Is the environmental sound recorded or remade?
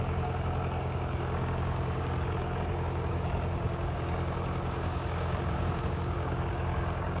remade